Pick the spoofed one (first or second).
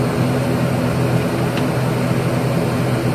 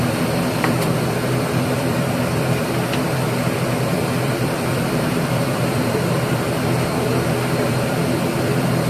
second